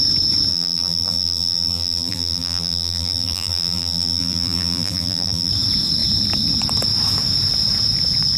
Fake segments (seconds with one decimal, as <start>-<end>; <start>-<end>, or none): 0.5-5.5